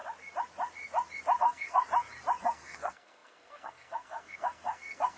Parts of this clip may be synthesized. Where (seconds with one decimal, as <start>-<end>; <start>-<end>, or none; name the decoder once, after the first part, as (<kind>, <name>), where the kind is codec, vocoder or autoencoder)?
1.4-1.8 (codec, SNAC); 2.4-5.2